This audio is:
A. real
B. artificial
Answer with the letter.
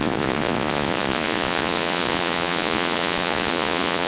B